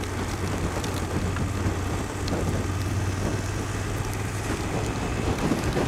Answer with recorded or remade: recorded